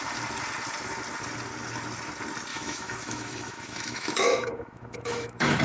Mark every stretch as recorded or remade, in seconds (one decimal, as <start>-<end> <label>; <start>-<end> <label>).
0.0-2.5 recorded; 2.5-5.6 remade